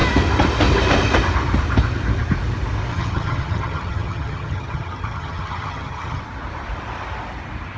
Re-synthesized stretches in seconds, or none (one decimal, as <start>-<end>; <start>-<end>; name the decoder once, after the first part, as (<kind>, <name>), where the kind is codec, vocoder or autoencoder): 2.9-6.2 (vocoder, HiFi-GAN)